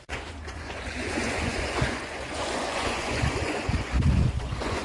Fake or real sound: fake